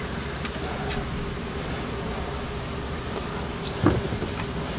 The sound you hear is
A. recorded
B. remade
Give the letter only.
A